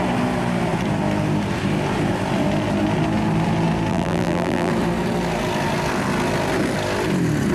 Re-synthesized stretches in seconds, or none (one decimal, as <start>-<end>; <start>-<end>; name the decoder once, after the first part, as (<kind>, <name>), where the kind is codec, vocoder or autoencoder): 3.9-4.7 (vocoder, BigVGAN v2)